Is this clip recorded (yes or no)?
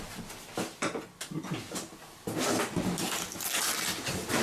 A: yes